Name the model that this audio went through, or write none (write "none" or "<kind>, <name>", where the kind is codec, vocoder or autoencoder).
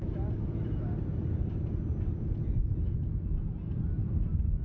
none